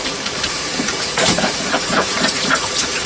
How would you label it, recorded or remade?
remade